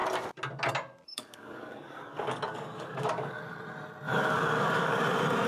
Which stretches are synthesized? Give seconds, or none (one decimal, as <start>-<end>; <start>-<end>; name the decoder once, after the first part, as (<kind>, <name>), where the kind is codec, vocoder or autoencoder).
1.1-3.4 (codec, DAC); 4.1-5.0